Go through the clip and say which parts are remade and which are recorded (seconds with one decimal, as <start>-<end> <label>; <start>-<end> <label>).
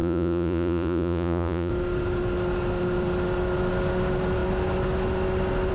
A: 0.0-1.7 remade; 1.7-5.7 recorded